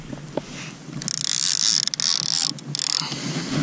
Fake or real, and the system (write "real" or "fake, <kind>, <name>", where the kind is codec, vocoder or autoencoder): real